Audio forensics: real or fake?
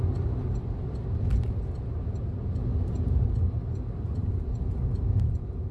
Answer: real